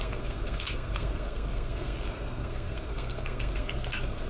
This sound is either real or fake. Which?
fake